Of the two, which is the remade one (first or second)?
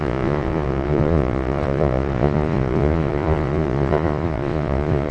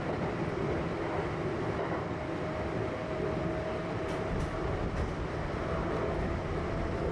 first